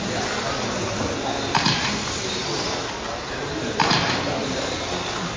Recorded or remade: recorded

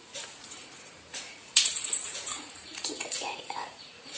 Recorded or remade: remade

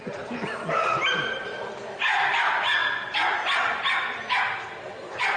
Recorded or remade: recorded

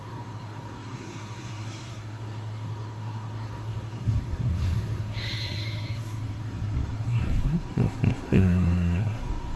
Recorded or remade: remade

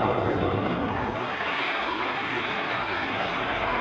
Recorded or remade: remade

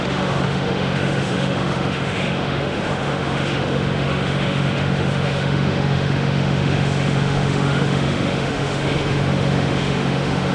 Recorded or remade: remade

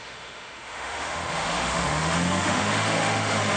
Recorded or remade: remade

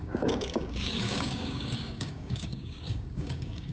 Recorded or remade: remade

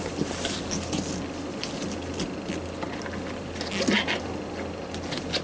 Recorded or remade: recorded